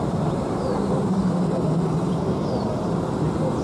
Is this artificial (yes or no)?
no